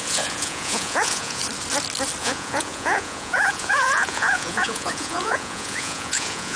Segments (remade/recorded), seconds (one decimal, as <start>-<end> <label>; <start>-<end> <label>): 0.0-1.4 remade; 1.4-2.2 recorded; 2.2-6.6 remade